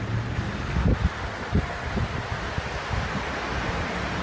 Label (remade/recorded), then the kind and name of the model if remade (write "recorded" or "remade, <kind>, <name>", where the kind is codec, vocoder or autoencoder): recorded